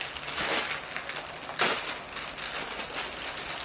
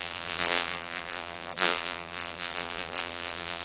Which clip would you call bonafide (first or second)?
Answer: first